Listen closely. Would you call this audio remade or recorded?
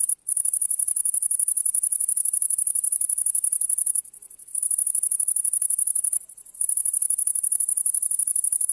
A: remade